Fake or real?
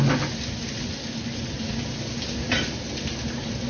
real